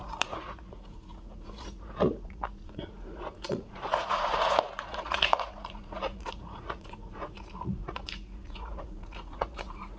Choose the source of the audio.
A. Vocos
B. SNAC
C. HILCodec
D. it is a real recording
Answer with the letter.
A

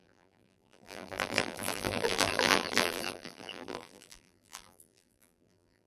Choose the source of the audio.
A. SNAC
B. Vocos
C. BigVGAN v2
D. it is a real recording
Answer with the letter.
C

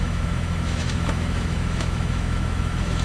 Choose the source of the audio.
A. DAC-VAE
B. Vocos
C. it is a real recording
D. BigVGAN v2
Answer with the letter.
A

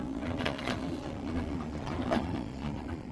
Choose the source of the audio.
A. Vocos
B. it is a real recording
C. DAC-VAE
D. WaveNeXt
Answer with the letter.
A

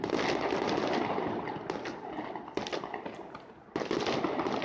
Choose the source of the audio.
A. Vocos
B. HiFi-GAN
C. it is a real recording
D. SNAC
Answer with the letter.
C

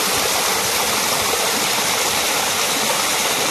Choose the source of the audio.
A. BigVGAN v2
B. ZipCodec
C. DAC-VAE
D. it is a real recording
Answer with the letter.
D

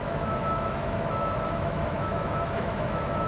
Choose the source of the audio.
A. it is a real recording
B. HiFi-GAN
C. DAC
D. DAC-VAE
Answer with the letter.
D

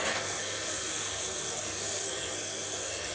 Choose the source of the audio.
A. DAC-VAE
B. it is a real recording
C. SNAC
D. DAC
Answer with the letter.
C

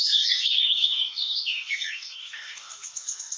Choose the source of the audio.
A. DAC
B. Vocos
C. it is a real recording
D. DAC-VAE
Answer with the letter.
A